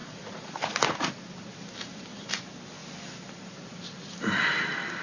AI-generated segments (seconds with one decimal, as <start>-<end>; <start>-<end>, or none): 0.0-1.1